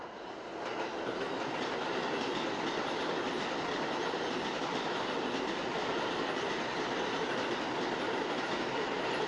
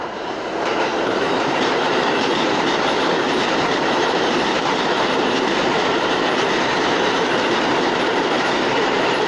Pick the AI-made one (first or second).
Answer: second